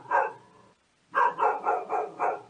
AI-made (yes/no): no